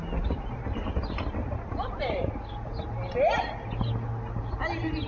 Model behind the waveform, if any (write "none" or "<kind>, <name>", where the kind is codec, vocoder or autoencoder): none